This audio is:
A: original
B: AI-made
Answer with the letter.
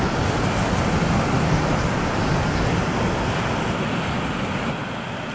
A